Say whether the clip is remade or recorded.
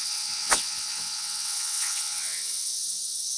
remade